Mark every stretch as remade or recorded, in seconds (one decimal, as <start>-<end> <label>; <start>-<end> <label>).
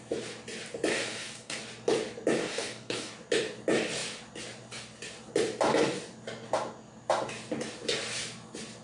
0.0-0.9 recorded; 0.9-1.6 remade; 1.6-2.4 recorded; 2.4-3.1 remade; 3.1-8.8 recorded